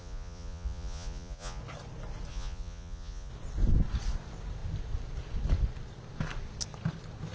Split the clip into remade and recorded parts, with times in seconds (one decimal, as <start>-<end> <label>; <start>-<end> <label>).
0.0-1.6 remade; 1.6-2.3 recorded; 2.3-3.3 remade; 3.3-7.3 recorded